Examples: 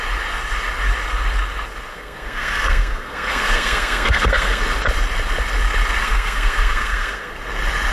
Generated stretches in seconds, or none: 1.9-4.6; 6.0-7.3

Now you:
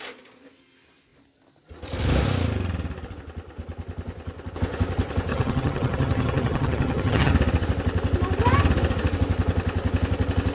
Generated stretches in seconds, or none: 5.3-7.3